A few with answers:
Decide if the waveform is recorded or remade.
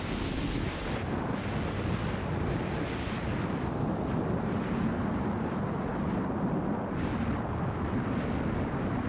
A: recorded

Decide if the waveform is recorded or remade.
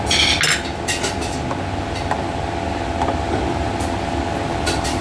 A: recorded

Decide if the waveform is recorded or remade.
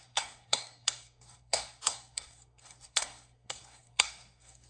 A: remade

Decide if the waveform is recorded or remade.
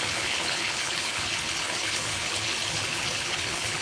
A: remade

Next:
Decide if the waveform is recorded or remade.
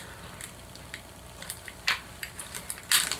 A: recorded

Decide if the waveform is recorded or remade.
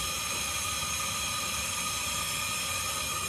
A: recorded